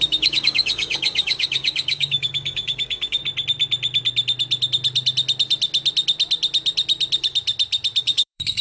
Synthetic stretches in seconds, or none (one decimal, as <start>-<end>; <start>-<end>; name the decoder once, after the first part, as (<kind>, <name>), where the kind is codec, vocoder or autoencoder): 0.0-3.2 (codec, DAC); 8.0-8.6